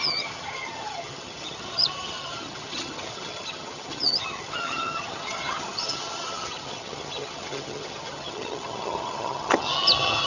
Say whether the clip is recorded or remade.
remade